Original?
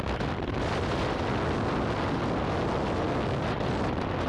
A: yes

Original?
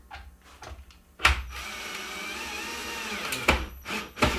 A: yes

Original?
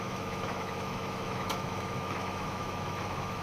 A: no